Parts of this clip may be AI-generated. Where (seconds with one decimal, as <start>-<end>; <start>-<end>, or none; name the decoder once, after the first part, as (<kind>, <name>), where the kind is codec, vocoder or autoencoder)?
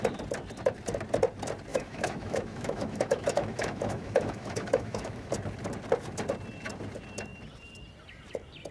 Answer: 1.7-5.3 (autoencoder, DAC-VAE)